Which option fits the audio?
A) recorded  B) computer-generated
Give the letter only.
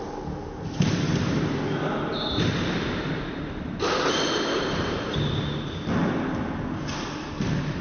A